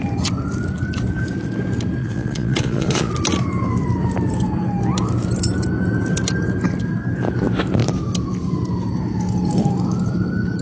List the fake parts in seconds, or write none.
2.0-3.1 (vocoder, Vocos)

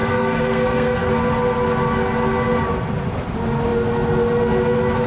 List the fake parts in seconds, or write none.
0.0-1.1 (codec, SNAC)

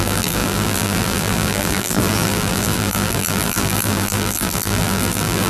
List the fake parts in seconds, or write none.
0.0-5.5 (vocoder, BigVGAN v2)

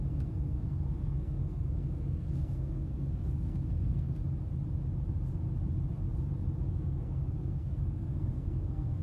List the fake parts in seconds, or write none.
0.0-4.2 (codec, SNAC); 6.7-9.0